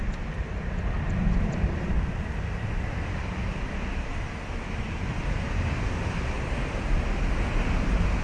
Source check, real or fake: real